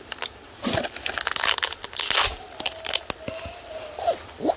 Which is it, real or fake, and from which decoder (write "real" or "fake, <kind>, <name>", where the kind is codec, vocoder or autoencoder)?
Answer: real